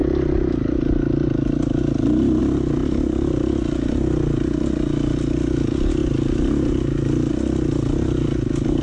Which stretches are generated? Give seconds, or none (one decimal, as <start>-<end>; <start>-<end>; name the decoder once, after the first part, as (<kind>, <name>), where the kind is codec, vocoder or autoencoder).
none